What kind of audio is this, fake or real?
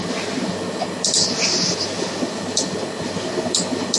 real